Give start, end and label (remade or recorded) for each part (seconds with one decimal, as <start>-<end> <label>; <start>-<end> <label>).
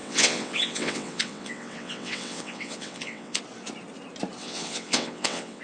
0.0-3.4 remade; 3.4-4.4 recorded; 4.4-5.6 remade